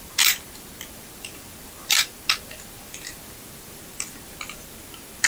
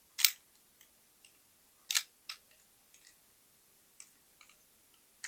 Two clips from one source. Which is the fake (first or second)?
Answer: first